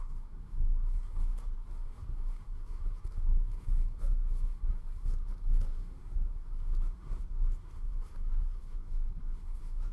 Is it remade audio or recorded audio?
remade